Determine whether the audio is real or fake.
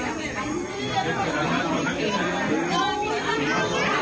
real